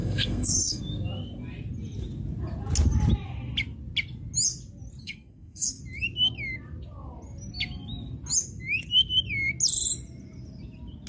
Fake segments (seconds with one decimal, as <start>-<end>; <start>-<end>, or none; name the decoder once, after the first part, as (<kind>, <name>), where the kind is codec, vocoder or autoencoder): 0.0-0.8 (codec, SNAC); 5.0-5.8